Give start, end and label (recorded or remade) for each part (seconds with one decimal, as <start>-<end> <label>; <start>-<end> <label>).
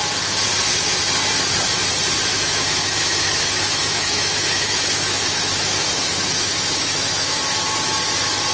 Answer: 0.0-2.3 recorded; 2.3-7.4 remade; 7.4-8.5 recorded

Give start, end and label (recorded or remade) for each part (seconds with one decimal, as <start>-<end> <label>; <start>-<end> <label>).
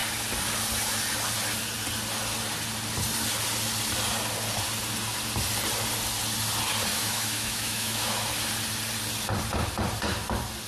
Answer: 0.0-6.9 recorded; 6.9-8.3 remade; 8.3-10.7 recorded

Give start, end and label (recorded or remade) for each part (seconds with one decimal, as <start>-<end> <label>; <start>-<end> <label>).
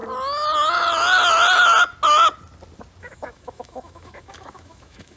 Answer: 0.0-3.0 recorded; 3.0-5.2 remade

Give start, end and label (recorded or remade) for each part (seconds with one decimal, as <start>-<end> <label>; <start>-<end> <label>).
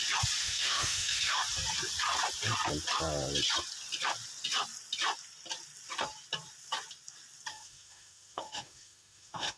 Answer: 0.0-0.4 recorded; 0.4-1.4 remade; 1.4-7.5 recorded; 7.5-9.6 remade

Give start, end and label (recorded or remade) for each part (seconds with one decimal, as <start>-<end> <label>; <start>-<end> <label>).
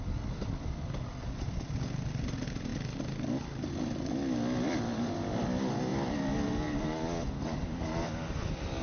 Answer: 0.0-8.8 recorded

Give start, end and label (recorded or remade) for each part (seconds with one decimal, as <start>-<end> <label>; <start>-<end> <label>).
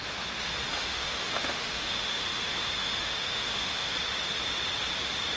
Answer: 0.0-0.7 recorded; 0.7-3.9 remade; 3.9-5.4 recorded